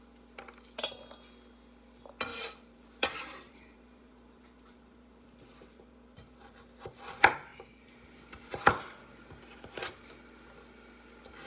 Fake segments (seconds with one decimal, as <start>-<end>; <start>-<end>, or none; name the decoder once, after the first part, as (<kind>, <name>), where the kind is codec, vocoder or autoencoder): 2.3-6.6 (vocoder, BigVGAN v2); 7.5-8.5